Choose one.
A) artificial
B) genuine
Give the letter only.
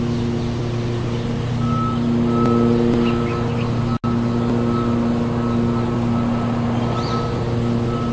B